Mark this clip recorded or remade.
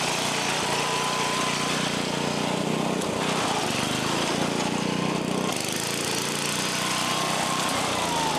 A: recorded